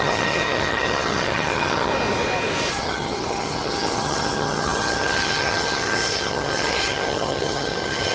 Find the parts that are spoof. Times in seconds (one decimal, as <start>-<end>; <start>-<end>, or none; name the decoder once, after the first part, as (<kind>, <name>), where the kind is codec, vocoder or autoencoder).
0.0-1.9 (vocoder, HiFi-GAN); 2.7-8.1